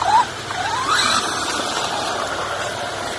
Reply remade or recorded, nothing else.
recorded